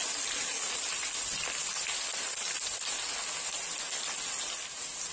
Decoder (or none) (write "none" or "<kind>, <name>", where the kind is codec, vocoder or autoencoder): none